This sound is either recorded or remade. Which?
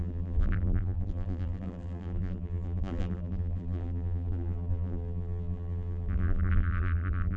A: remade